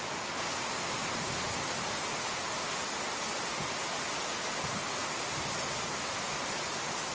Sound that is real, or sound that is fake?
real